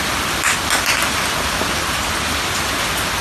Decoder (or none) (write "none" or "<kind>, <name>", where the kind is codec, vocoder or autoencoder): none